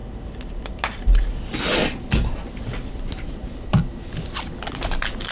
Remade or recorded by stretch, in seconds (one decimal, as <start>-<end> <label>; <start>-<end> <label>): 0.0-5.3 recorded